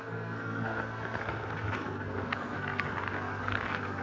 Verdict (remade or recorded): remade